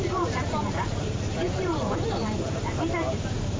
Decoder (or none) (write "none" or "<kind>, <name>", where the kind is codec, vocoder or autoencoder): vocoder, BigVGAN v2